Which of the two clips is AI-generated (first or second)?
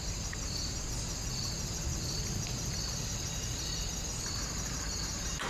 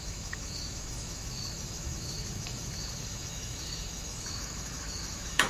second